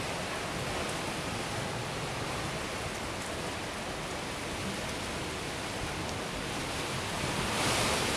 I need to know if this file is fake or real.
real